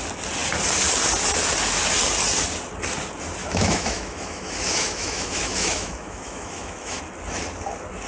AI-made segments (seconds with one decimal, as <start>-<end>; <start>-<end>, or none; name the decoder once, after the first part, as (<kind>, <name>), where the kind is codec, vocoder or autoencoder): 3.4-7.0 (autoencoder, DAC-VAE)